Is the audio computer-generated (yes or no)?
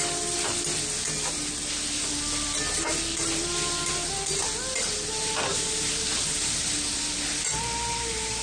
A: no